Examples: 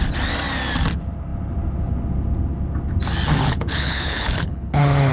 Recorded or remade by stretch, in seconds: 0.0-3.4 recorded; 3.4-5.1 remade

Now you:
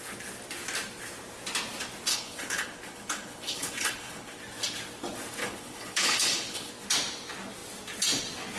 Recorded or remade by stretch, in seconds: 0.0-2.1 recorded; 2.1-4.4 remade; 4.4-5.4 recorded; 5.4-6.7 remade; 6.7-8.6 recorded

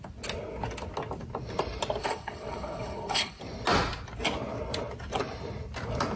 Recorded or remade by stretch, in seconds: 0.0-2.0 recorded; 2.0-3.4 remade; 3.4-6.2 recorded

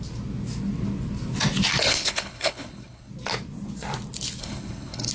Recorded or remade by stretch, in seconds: 0.0-1.8 recorded; 1.8-3.1 remade; 3.1-4.4 recorded; 4.4-5.1 remade